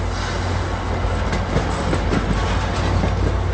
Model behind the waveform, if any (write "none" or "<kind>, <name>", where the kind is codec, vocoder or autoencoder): none